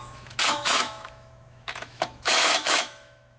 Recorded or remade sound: remade